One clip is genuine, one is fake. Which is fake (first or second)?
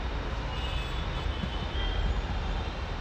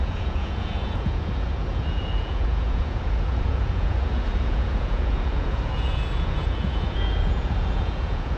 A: second